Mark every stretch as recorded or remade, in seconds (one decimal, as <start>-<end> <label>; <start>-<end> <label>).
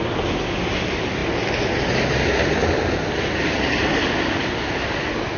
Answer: 0.0-5.4 recorded